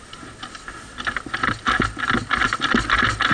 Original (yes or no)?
yes